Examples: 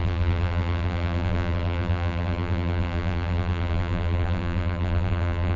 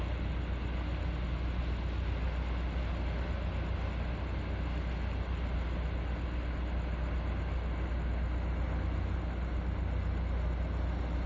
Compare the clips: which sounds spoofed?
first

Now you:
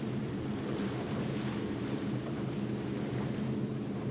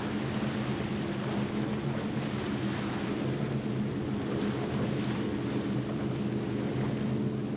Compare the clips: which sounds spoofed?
first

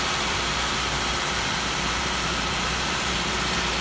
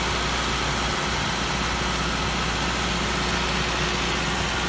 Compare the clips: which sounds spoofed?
first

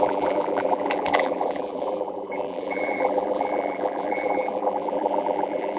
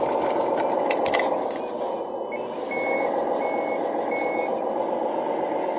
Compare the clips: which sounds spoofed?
first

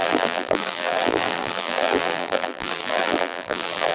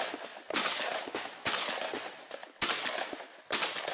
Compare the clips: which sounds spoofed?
first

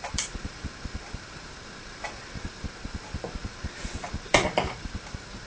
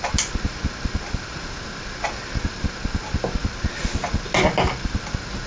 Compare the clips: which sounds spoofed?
first